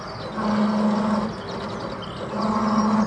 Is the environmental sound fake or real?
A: real